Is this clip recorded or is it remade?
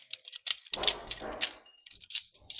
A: recorded